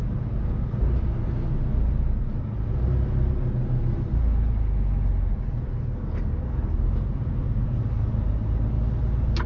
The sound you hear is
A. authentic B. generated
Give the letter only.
A